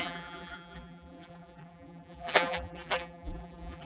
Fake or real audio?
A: fake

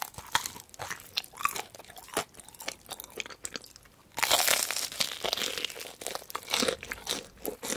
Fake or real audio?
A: real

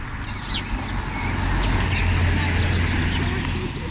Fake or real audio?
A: real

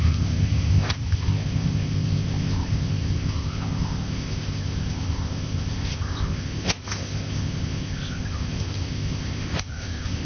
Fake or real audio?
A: fake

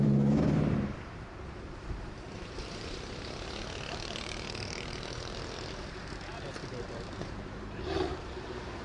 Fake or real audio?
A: fake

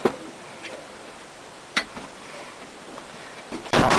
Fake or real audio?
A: fake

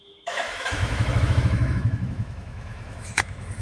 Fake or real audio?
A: fake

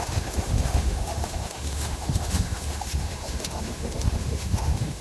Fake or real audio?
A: fake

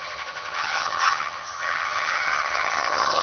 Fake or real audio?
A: fake